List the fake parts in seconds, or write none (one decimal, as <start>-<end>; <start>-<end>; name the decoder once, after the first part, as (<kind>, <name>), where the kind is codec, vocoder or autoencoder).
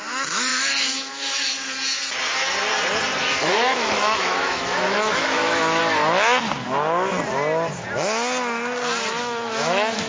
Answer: 0.0-1.5 (autoencoder, DAC-VAE); 3.2-5.8; 9.2-10.1